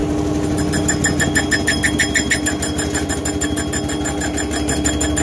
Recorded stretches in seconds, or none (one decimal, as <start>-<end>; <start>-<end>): 0.0-5.2